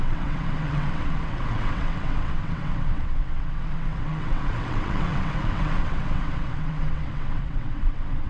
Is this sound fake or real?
fake